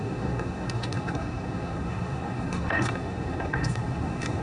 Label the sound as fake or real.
fake